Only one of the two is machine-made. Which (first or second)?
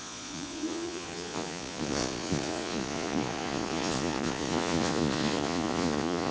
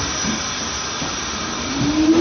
first